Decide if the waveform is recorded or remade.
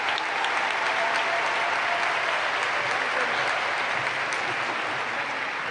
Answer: recorded